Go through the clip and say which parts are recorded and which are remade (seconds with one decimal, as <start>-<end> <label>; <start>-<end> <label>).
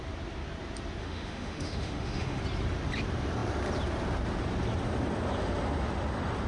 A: 0.0-1.0 recorded; 1.0-2.4 remade; 2.4-6.5 recorded